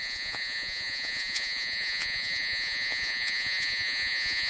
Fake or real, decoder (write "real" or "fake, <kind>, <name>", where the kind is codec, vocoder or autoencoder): fake, vocoder, Vocos